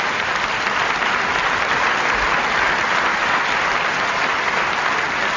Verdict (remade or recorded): recorded